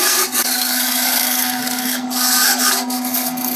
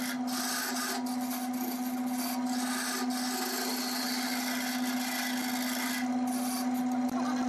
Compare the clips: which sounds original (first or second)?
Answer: second